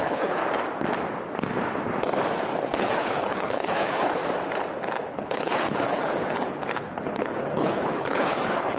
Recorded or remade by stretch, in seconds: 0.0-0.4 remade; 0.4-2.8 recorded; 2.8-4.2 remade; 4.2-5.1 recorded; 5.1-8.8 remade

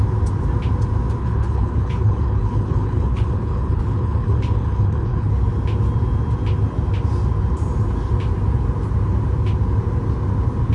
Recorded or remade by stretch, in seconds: 0.0-1.2 recorded; 1.2-5.3 remade; 5.3-10.7 recorded